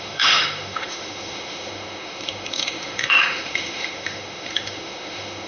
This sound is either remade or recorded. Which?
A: remade